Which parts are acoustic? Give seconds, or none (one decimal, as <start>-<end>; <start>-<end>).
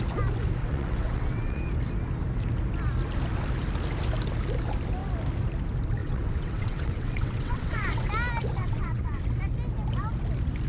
0.0-0.6; 1.6-6.0; 8.1-8.6; 9.2-10.7